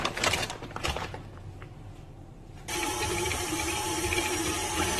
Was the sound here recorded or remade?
remade